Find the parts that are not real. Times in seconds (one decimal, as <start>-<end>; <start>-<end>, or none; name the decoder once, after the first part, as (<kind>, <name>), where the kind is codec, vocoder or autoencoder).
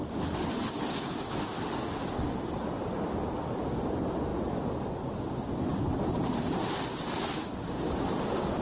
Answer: none